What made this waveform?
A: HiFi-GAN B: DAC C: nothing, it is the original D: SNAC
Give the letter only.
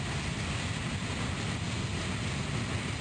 C